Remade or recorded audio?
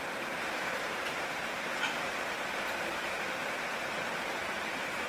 remade